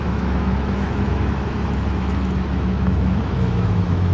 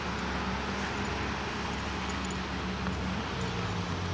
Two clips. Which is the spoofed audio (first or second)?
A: first